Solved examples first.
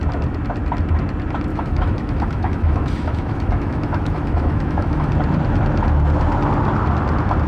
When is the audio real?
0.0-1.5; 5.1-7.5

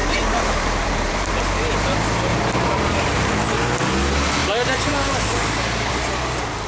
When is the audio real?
1.3-2.3; 3.3-6.7

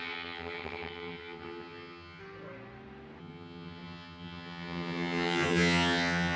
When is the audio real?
2.2-3.2

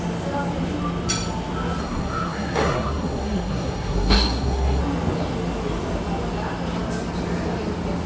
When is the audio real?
0.0-1.8; 4.8-8.1

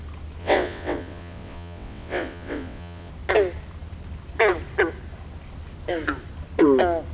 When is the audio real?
0.0-0.4; 3.1-7.1

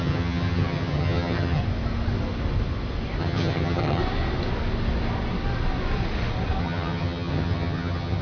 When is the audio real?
1.6-3.2; 4.0-6.6

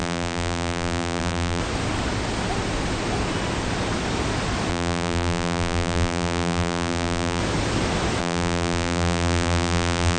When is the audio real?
1.6-4.7; 7.4-8.2